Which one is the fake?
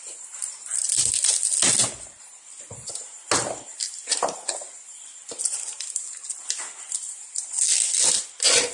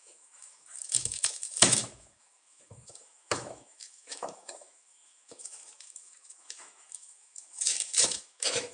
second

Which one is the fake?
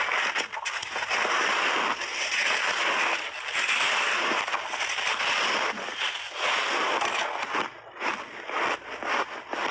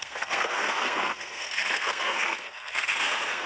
second